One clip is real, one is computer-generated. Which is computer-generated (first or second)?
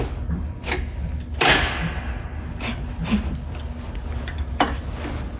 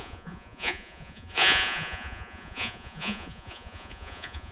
second